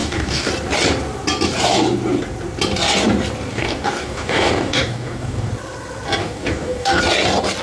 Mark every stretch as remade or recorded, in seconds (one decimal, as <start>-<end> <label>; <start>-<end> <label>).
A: 0.0-0.5 remade; 0.5-3.5 recorded; 3.5-5.5 remade; 5.5-6.2 recorded; 6.2-7.0 remade; 7.0-7.6 recorded

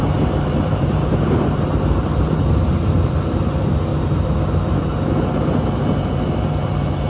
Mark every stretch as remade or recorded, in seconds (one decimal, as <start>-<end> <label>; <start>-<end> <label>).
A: 0.0-3.9 remade; 3.9-6.0 recorded; 6.0-7.1 remade

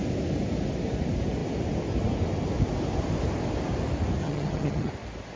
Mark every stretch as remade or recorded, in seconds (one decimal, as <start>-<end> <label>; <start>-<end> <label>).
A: 0.0-4.2 recorded; 4.2-4.9 remade; 4.9-5.4 recorded